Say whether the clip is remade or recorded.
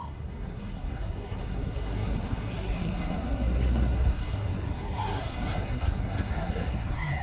remade